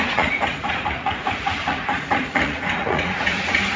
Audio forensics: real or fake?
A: fake